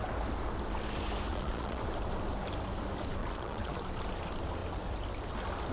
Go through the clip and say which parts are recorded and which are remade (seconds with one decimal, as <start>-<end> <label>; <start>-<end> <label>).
0.0-1.3 recorded; 1.3-1.8 remade; 1.8-3.2 recorded; 3.2-3.7 remade; 3.7-5.7 recorded